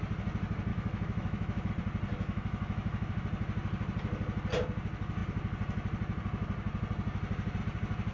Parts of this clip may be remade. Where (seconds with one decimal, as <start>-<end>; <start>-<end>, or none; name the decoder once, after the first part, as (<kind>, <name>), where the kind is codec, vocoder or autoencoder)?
0.7-1.7 (autoencoder, DAC-VAE); 2.1-3.1